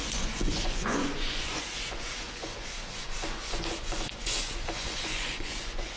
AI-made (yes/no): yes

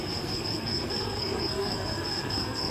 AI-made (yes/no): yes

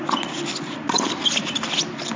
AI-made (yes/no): no